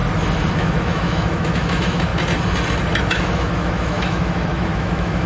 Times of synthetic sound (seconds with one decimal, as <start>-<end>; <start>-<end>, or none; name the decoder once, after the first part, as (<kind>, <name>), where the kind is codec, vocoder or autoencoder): 0.5-2.1 (autoencoder, DAC-VAE); 3.0-5.3